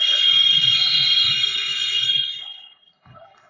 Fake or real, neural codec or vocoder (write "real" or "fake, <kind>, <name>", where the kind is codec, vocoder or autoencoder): fake, codec, HILCodec